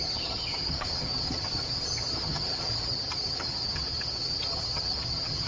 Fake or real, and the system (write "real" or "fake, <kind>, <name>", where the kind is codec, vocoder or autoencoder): fake, vocoder, HiFi-GAN